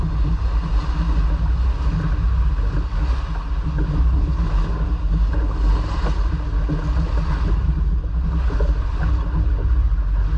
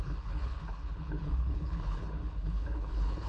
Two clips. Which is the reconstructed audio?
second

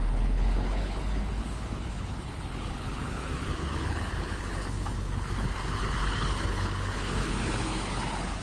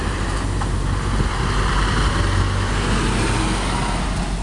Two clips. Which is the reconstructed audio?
first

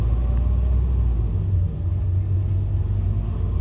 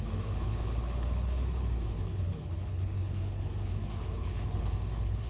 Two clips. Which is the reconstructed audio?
second